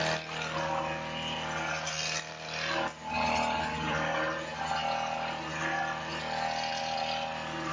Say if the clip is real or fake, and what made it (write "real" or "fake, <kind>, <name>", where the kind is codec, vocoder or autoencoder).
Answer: real